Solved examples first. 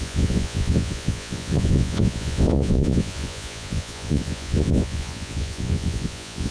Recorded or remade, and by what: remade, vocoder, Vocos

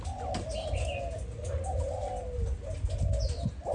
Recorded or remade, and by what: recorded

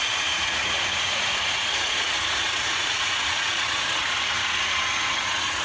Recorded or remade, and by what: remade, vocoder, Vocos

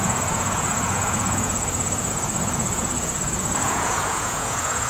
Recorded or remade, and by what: remade, vocoder, Vocos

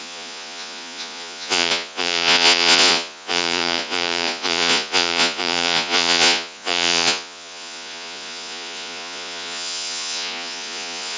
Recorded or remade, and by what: remade, vocoder, Vocos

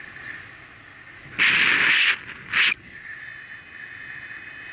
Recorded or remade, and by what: recorded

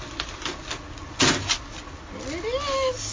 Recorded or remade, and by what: recorded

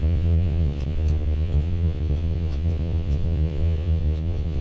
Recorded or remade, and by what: remade, vocoder, Vocos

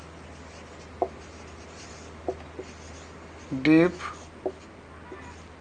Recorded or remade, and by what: recorded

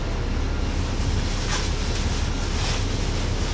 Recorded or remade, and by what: recorded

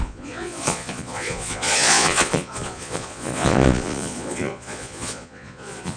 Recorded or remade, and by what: remade, vocoder, Vocos